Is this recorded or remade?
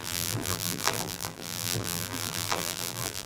remade